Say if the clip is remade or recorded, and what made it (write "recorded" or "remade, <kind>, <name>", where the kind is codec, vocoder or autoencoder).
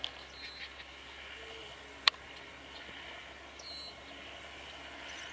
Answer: recorded